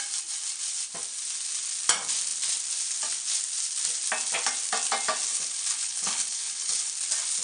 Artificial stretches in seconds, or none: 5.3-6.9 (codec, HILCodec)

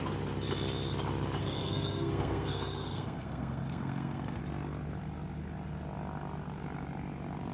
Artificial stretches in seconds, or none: 1.4-4.4 (codec, SNAC)

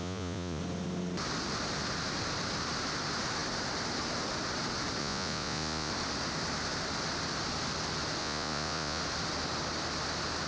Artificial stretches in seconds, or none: 0.0-0.6 (vocoder, Vocos); 5.0-5.9; 8.2-9.0

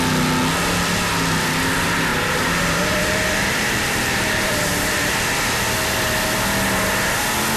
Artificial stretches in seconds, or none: 2.1-5.2 (vocoder, BigVGAN v2)

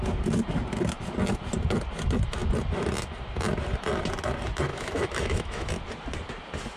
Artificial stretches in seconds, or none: 4.7-5.7 (autoencoder, DAC-VAE)

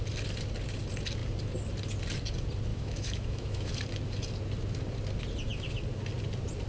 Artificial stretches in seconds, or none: 2.7-3.7 (autoencoder, DAC-VAE)

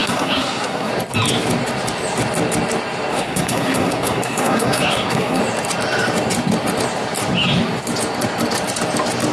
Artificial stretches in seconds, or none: 0.0-0.9 (codec, SNAC); 3.1-5.4

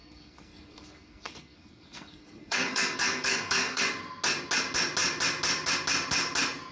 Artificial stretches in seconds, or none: 0.0-3.8 (codec, SNAC)